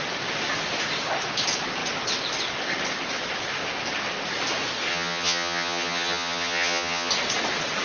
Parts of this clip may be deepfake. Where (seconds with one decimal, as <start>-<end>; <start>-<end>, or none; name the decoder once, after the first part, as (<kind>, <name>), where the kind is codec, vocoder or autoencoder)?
4.9-7.1 (vocoder, HiFi-GAN)